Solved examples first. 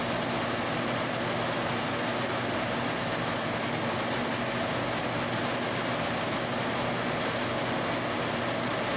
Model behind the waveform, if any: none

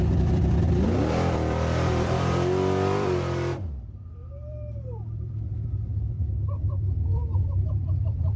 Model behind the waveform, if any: vocoder, BigVGAN v2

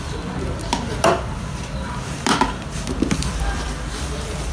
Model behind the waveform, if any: vocoder, BigVGAN v2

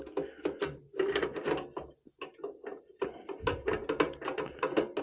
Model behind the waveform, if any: none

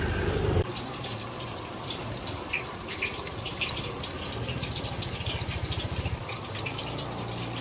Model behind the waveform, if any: vocoder, BigVGAN v2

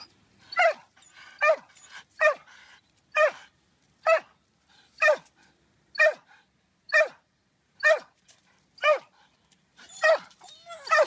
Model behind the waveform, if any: none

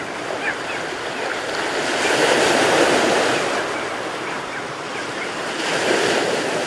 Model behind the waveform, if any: none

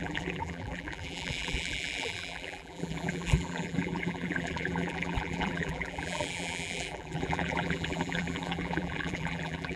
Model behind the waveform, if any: vocoder, BigVGAN v2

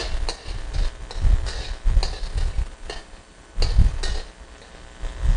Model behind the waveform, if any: none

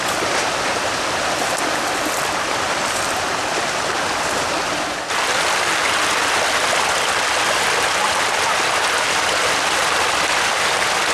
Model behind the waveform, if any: none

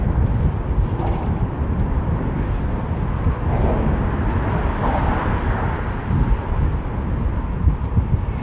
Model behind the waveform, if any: none